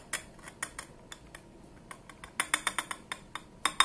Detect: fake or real real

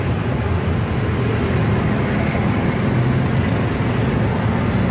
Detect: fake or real real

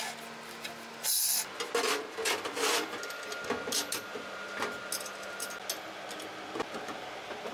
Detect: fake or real real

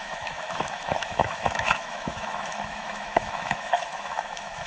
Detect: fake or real fake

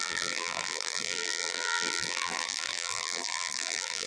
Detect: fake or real fake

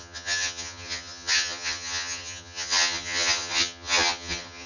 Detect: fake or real fake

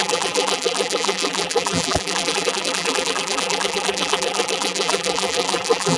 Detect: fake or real fake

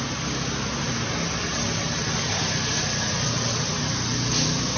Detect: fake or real real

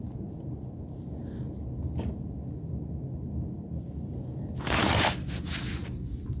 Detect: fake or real real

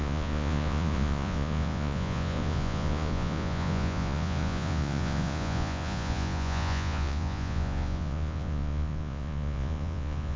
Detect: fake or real fake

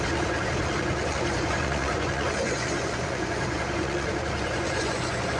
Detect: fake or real fake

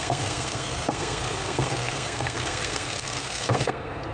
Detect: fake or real fake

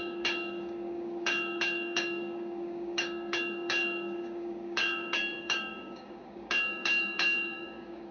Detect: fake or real fake